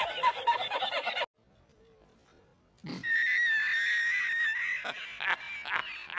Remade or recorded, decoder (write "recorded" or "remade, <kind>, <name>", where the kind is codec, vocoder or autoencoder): recorded